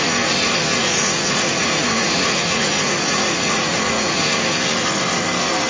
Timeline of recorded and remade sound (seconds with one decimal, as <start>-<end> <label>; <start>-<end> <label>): 0.0-0.8 recorded; 0.8-4.2 remade; 4.2-5.7 recorded